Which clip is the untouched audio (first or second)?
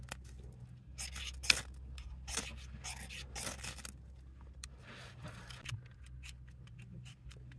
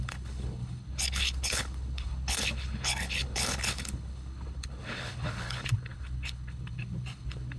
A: first